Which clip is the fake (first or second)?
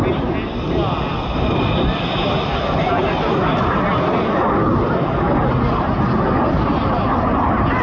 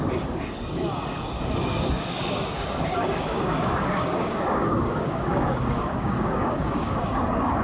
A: second